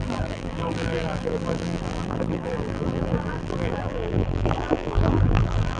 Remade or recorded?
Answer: remade